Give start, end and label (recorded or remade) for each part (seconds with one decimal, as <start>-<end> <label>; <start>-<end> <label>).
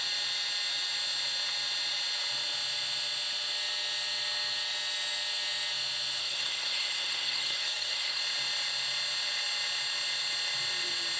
0.0-6.2 recorded; 6.2-8.2 remade; 8.2-11.2 recorded